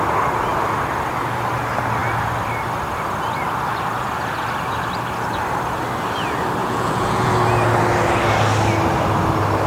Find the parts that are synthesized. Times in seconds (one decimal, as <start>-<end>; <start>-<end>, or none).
6.6-7.3

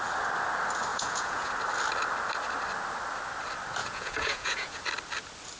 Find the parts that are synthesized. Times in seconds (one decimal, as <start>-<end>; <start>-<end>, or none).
0.9-1.5; 3.8-4.8

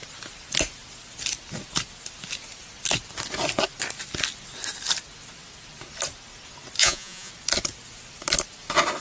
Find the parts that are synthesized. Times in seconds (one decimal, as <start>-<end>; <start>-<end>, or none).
6.8-7.3

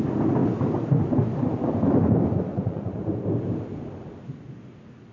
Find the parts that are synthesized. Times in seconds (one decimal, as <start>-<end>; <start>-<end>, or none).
2.5-3.0

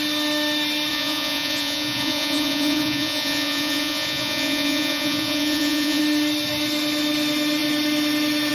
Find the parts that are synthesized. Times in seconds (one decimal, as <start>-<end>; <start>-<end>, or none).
0.9-6.0

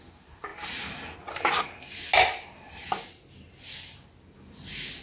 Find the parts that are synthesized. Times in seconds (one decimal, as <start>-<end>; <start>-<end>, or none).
none

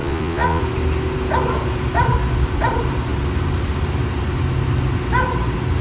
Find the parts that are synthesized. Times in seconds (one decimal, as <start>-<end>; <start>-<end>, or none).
0.0-0.6